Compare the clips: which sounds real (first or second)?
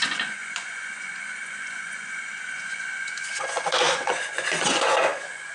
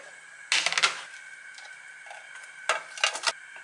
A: second